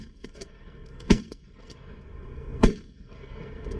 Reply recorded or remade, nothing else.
remade